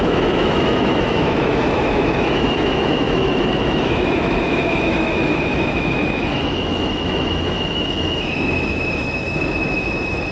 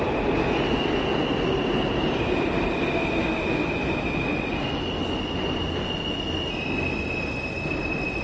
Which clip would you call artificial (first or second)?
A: first